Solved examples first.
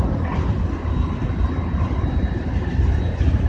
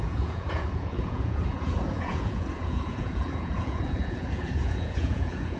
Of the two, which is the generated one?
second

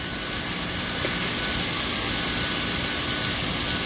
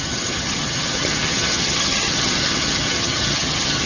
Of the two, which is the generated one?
second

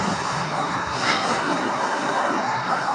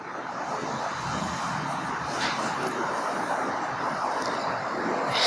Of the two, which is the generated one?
first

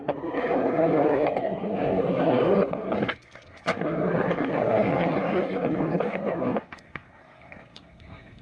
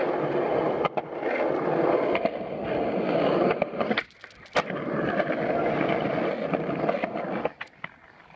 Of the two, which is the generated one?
first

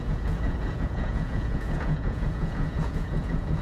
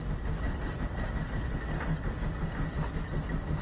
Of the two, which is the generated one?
first